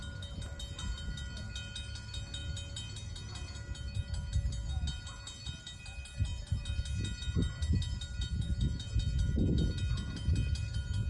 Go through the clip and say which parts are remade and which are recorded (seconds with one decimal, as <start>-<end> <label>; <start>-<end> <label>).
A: 0.0-11.1 recorded